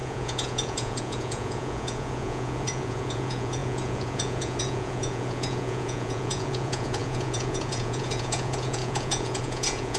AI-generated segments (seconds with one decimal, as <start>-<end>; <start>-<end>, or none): 0.0-10.0